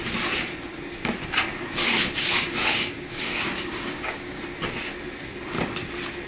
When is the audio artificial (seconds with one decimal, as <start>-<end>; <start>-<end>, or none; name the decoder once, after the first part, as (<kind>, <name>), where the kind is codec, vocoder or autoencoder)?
1.7-4.4 (codec, DAC)